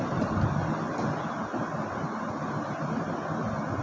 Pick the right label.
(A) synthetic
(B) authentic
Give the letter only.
B